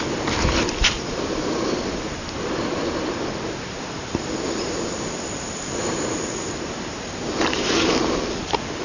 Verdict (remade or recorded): remade